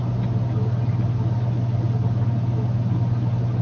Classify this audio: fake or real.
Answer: real